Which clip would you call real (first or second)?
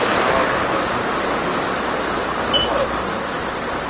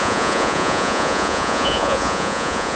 first